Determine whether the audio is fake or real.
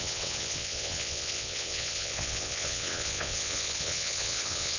fake